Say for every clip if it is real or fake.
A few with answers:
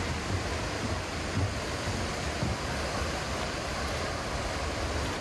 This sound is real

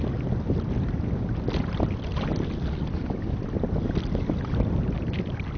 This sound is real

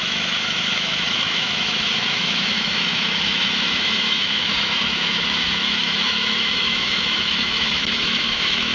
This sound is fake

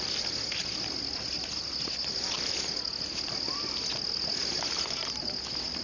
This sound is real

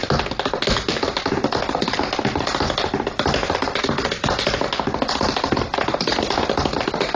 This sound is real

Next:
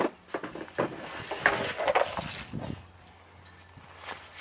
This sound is real